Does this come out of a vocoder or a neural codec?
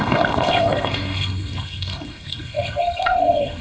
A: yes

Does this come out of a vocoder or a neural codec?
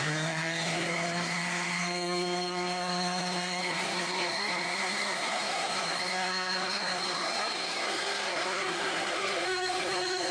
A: yes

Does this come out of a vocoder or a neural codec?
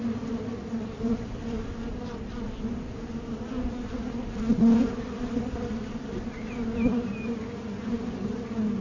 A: no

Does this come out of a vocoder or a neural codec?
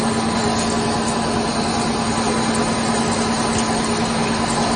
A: no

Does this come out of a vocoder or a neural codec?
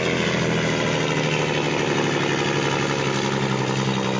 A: no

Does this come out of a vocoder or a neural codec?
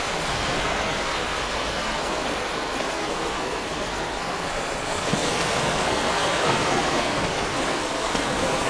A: yes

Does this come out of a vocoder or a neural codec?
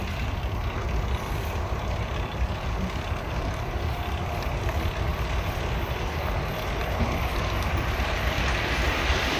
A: no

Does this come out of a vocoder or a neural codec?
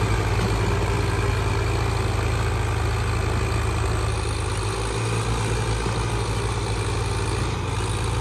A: no